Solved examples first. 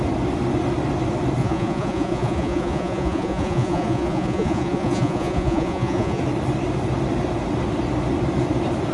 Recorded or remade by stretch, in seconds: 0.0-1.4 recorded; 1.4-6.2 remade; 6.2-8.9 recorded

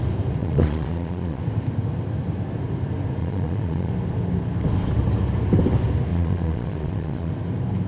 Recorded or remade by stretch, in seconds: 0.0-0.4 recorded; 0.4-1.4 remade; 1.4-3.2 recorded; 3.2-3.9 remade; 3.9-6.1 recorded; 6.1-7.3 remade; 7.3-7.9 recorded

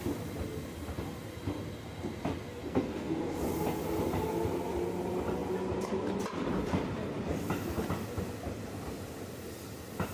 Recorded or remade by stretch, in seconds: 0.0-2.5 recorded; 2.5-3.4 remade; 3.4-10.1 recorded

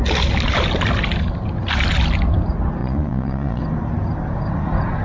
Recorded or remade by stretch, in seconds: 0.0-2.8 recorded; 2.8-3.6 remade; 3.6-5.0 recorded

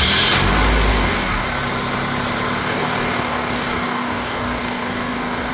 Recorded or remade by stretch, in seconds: 0.0-0.9 recorded; 0.9-1.4 remade; 1.4-2.6 recorded; 2.6-5.5 remade

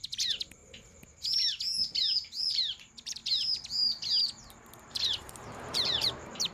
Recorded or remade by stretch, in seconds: 0.0-0.6 remade; 0.6-2.4 recorded; 2.4-3.2 remade; 3.2-4.8 recorded; 4.8-6.5 remade

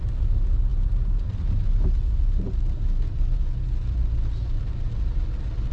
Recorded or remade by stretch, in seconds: 0.0-5.7 recorded